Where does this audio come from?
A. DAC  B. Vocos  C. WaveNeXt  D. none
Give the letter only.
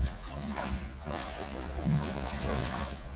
B